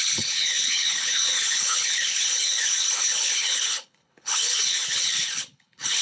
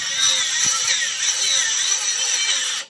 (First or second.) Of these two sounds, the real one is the second